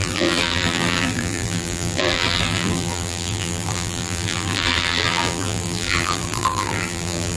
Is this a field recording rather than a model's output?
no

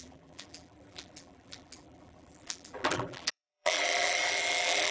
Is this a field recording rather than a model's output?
no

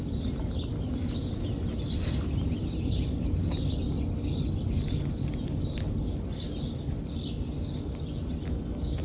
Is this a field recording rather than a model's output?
yes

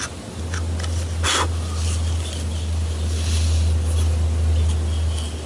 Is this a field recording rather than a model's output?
yes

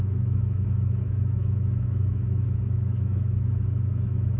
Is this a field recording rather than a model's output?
no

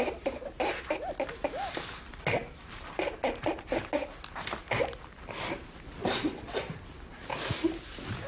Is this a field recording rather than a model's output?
yes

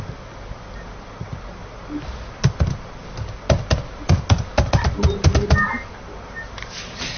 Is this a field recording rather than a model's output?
yes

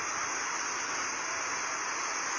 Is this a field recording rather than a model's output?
yes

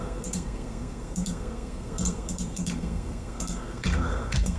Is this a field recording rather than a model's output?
no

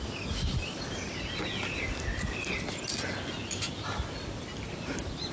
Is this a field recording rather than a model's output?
yes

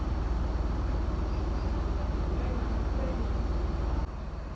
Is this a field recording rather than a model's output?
yes